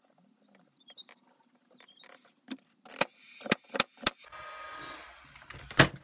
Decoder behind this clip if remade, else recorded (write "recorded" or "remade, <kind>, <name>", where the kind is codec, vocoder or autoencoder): recorded